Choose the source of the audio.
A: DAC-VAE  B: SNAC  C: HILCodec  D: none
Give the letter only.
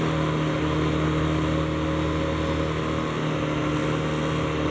D